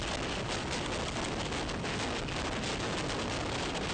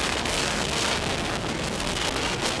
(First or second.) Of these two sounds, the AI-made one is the second